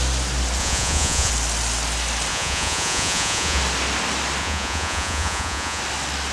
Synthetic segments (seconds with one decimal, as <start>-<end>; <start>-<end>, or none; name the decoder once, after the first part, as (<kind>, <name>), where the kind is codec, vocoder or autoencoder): 0.6-1.3 (vocoder, Vocos); 2.3-3.6; 4.4-5.8